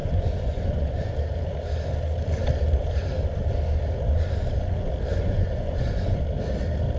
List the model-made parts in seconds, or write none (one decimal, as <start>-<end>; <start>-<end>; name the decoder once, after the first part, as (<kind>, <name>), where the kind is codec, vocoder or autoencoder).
0.0-1.1 (vocoder, Vocos); 5.1-6.2